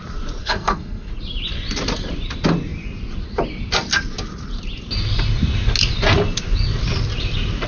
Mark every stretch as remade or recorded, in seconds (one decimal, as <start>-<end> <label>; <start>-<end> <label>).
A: 0.0-0.4 recorded; 0.4-1.1 remade; 1.1-7.7 recorded

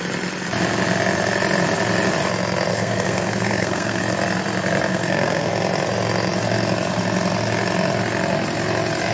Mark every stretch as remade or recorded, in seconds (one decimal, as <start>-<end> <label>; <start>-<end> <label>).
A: 0.0-2.7 recorded; 2.7-4.0 remade; 4.0-4.9 recorded; 4.9-5.5 remade; 5.5-9.1 recorded

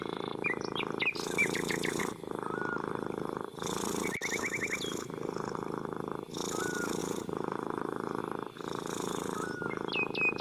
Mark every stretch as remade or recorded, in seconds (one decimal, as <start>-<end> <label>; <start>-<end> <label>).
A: 0.0-1.4 recorded; 1.4-2.0 remade; 2.0-7.0 recorded; 7.0-8.2 remade; 8.2-10.4 recorded

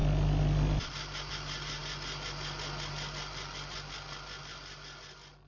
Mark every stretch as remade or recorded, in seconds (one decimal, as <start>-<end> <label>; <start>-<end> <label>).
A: 0.0-5.5 recorded

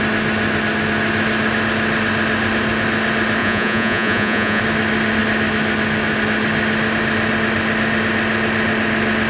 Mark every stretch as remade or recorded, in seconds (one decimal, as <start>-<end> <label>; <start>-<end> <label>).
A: 0.0-3.4 recorded; 3.4-4.6 remade; 4.6-9.3 recorded

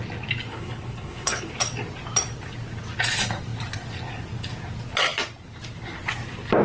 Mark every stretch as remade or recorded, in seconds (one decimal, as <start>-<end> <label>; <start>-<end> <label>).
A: 0.0-0.5 recorded; 0.5-1.5 remade; 1.5-6.6 recorded